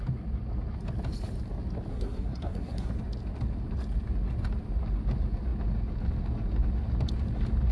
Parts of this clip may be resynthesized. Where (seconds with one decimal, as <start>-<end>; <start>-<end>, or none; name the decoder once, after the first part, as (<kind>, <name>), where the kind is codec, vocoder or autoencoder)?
1.9-2.9 (codec, SNAC)